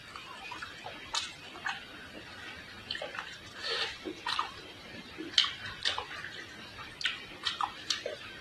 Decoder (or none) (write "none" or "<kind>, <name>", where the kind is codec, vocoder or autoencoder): vocoder, BigVGAN v2